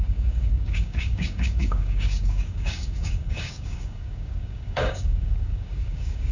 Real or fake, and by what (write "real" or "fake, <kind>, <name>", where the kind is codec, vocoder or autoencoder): fake, codec, DAC